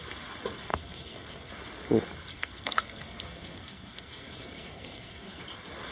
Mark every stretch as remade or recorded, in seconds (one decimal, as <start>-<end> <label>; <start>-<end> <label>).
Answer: 0.0-0.7 recorded; 0.7-1.5 remade; 1.5-2.3 recorded; 2.3-5.4 remade; 5.4-5.9 recorded